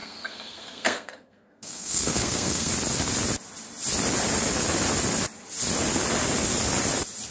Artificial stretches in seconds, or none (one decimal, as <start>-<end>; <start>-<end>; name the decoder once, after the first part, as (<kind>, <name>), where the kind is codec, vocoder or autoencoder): 0.0-2.7 (codec, SNAC)